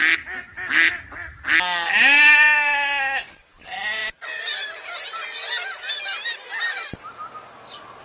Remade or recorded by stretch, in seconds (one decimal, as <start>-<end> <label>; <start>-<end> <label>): 0.0-8.0 recorded

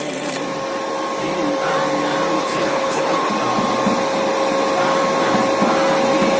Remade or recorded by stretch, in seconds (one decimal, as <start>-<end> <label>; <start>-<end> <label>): 0.0-2.4 recorded; 2.4-3.3 remade; 3.3-6.4 recorded

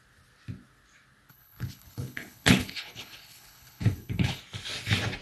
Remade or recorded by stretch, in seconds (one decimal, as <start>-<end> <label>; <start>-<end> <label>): 0.0-1.3 recorded; 1.3-4.4 remade; 4.4-5.2 recorded